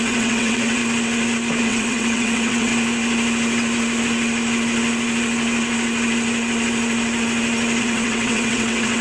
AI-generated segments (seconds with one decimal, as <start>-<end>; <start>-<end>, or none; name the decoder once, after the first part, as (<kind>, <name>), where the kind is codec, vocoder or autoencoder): 0.0-0.8 (vocoder, WaveNeXt); 1.6-2.7; 7.8-9.0